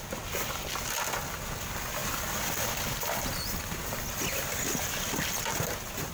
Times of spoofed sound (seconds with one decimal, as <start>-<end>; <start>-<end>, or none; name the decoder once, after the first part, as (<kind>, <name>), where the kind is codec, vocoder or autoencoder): none

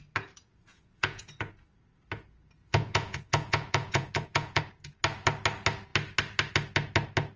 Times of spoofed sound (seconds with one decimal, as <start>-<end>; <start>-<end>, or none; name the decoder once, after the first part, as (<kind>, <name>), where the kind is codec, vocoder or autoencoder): 0.7-1.5 (vocoder, Vocos); 2.6-4.6